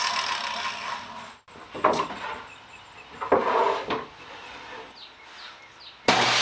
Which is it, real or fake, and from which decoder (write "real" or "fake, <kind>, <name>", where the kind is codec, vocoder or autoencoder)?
real